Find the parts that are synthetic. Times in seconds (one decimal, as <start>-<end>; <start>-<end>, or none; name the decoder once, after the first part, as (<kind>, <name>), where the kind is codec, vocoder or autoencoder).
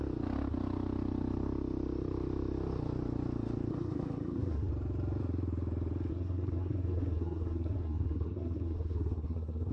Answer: 3.7-4.7 (codec, SNAC); 6.1-9.7